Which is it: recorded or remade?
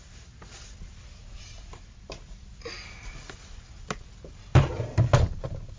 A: recorded